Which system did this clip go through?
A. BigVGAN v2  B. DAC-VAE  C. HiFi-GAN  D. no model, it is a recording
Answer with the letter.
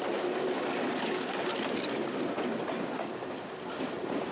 D